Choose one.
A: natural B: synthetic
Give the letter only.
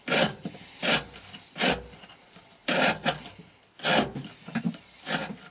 A